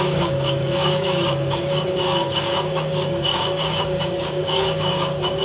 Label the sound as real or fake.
fake